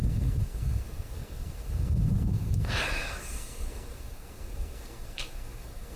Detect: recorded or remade remade